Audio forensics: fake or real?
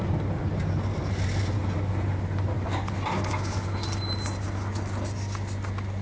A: real